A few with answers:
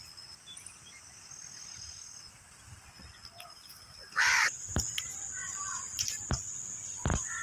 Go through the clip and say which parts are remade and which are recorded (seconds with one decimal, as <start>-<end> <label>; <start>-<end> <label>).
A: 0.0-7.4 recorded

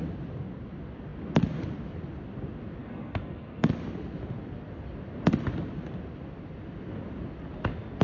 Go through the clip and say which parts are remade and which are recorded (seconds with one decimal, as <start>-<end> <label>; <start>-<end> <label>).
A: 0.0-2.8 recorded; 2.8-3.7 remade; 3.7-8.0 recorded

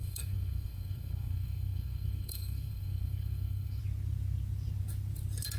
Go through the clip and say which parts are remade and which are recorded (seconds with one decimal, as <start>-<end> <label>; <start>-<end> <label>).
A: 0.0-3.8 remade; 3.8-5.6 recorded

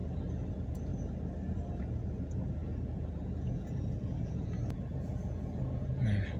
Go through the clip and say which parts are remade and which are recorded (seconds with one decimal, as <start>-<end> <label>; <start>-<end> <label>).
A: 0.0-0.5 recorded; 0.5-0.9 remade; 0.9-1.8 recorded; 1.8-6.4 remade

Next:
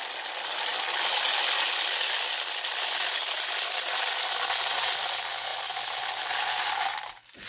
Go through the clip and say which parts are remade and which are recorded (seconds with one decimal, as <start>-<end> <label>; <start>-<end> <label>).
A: 0.0-7.5 recorded

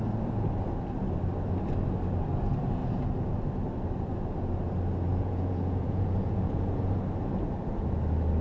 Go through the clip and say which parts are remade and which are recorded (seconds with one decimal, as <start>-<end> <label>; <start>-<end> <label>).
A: 0.0-5.1 recorded; 5.1-6.7 remade; 6.7-8.4 recorded